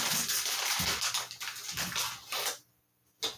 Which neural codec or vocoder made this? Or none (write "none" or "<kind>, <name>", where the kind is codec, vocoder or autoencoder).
none